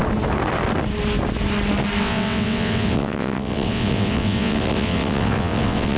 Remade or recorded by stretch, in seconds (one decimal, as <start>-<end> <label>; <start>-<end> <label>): 0.0-2.0 recorded; 2.0-6.0 remade

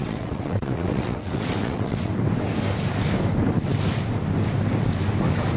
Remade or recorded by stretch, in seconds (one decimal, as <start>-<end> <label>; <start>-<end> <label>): 0.0-2.1 remade; 2.1-5.6 recorded

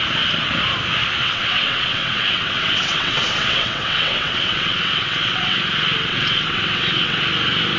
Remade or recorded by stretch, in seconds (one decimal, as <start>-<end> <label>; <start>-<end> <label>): 0.0-1.2 recorded; 1.2-5.6 remade; 5.6-6.1 recorded; 6.1-7.2 remade; 7.2-7.8 recorded